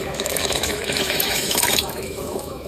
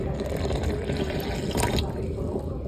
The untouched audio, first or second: second